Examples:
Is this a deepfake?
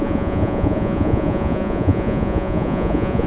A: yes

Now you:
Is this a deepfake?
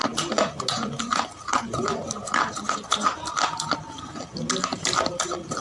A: no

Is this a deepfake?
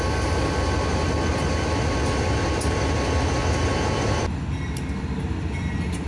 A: no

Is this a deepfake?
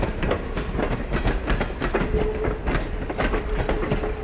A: no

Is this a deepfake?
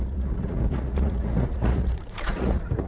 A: yes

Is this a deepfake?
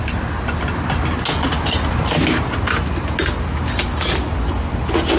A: no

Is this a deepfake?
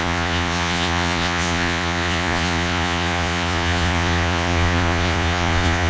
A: yes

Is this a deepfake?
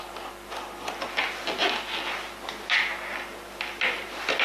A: no